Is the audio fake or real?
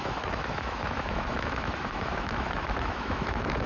fake